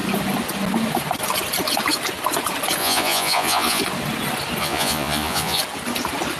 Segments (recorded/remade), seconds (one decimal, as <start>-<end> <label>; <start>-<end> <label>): 0.0-2.8 recorded; 2.8-3.8 remade; 3.8-4.6 recorded; 4.6-5.6 remade; 5.6-6.4 recorded